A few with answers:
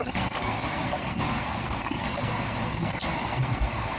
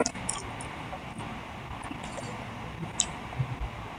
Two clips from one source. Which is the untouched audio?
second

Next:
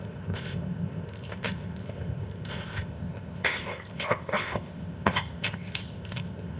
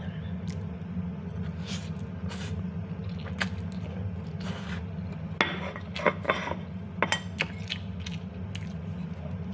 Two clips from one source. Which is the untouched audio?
second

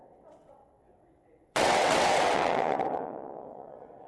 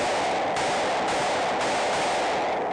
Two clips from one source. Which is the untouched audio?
second